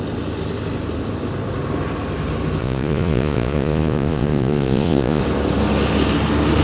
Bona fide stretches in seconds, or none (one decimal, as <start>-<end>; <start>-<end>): 0.0-2.6; 5.2-6.6